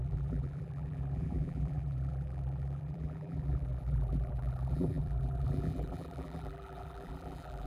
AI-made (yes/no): yes